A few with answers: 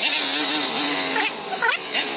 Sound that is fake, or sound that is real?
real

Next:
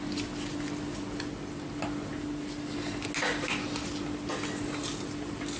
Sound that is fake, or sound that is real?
real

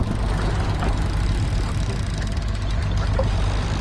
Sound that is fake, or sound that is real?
real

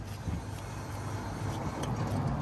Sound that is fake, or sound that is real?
real